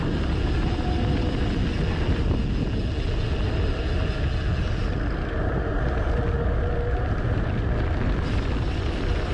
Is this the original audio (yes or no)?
yes